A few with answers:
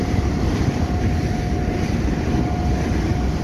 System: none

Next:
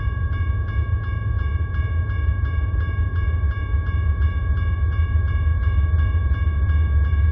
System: vocoder, Vocos